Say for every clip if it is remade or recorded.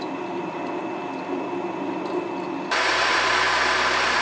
remade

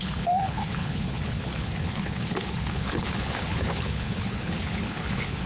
remade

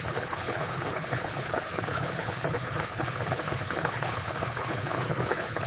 remade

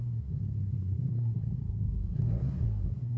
remade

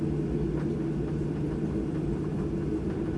recorded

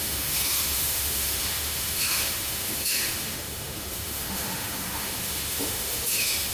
remade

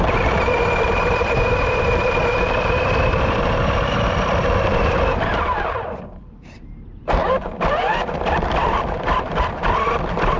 remade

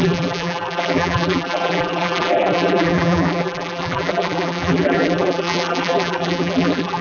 remade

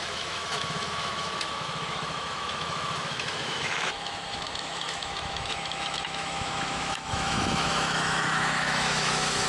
remade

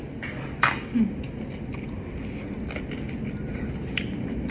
recorded